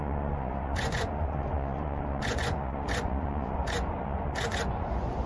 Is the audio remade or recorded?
remade